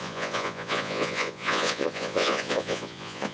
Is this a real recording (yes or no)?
no